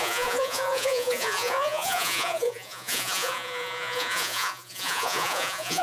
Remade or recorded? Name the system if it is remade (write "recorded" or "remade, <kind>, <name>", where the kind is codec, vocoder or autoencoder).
remade, vocoder, Vocos